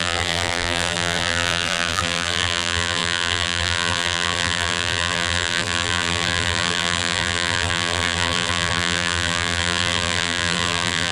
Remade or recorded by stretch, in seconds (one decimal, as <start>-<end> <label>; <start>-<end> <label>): 0.0-11.1 remade